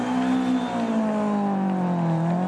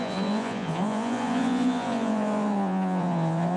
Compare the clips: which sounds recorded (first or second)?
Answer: first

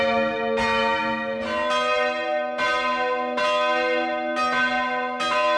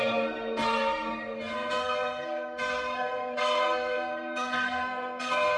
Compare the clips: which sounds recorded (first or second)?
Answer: first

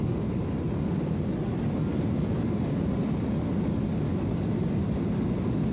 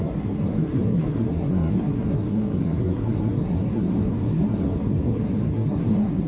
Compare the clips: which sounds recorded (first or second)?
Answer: first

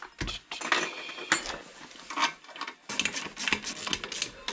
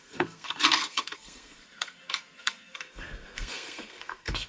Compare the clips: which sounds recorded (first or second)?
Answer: first